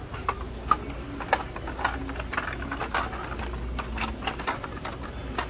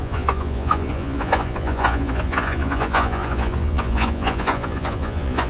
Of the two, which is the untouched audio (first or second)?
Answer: first